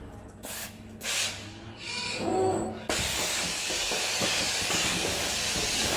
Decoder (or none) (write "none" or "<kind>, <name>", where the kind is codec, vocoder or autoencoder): codec, DAC